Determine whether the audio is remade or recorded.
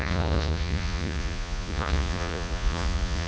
remade